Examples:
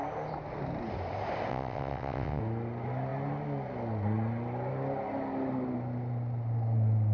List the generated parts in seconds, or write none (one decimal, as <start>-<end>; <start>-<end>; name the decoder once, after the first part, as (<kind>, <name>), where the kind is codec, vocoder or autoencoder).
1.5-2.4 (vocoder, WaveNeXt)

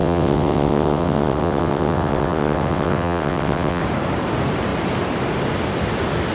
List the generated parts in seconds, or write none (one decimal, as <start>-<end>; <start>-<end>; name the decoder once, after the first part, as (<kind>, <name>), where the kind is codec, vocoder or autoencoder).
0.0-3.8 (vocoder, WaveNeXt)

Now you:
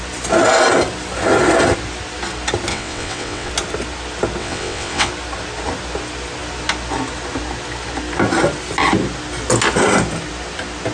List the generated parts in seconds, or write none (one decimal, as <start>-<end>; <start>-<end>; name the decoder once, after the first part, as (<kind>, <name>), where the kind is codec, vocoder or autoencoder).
2.7-3.5 (vocoder, WaveNeXt); 4.4-5.1

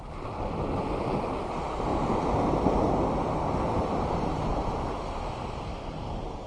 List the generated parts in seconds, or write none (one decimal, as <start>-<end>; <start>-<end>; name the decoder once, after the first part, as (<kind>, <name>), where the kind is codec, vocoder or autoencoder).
none